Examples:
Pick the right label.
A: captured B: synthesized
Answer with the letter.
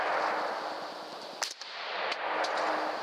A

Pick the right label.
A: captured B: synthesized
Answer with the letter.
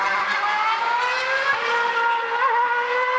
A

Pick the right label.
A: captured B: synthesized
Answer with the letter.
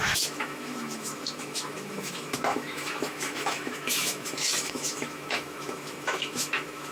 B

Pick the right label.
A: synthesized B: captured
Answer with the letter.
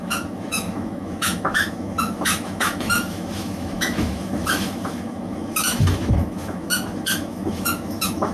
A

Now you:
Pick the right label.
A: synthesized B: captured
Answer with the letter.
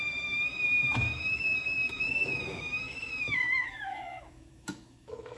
A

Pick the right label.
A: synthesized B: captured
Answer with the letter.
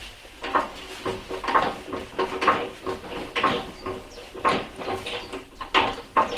B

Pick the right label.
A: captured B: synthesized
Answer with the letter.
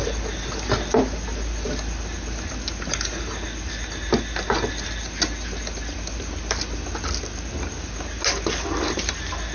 A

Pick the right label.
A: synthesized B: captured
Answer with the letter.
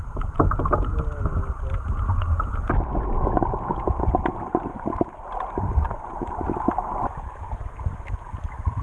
B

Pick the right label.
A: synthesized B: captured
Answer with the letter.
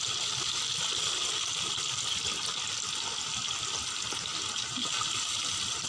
B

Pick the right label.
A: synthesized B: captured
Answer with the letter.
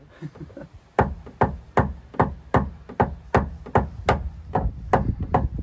B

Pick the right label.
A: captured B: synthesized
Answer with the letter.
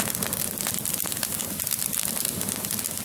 A